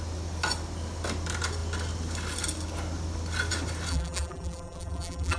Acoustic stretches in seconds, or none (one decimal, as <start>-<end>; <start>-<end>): 0.0-3.9